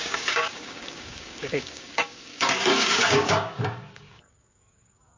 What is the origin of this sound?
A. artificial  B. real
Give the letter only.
A